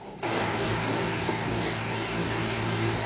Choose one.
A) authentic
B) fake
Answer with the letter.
B